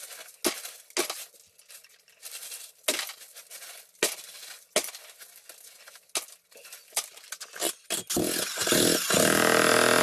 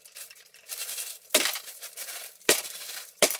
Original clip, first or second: first